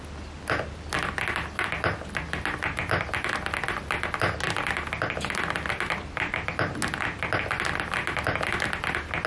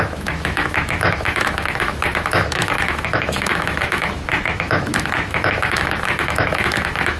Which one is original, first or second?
first